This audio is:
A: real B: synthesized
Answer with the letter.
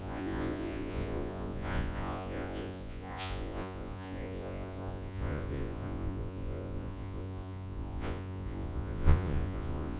B